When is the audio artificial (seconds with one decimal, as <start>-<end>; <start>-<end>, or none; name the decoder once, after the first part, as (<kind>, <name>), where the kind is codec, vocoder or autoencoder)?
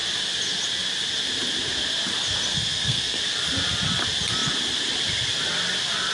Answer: 2.5-3.2 (codec, SNAC)